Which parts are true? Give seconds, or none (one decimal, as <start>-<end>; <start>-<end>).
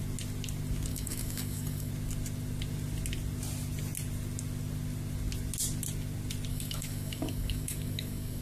0.0-0.9; 1.9-6.5